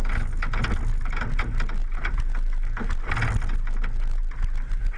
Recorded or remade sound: recorded